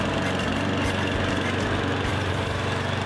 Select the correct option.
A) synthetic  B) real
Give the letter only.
B